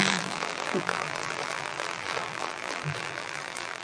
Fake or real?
fake